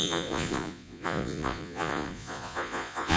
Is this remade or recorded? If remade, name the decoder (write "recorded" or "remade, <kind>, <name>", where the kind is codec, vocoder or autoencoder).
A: remade, vocoder, Vocos